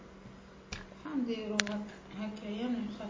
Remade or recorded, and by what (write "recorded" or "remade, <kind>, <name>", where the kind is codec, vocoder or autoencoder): recorded